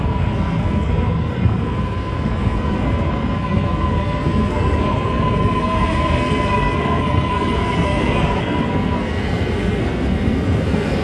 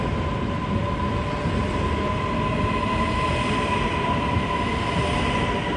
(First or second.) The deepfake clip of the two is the first